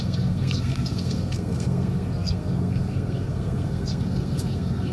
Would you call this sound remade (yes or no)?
yes